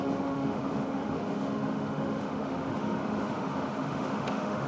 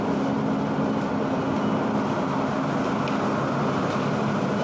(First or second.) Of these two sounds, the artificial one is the first